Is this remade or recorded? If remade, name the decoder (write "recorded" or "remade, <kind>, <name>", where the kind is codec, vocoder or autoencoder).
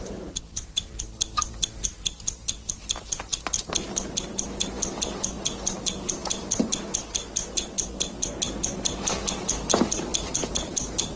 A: recorded